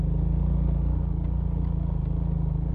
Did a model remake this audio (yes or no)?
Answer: no